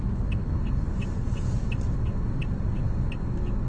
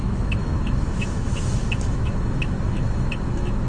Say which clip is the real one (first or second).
first